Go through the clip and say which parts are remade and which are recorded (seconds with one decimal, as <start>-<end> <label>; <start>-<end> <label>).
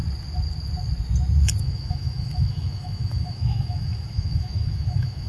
0.0-1.6 recorded; 1.6-5.3 remade